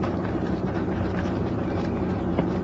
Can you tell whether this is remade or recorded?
remade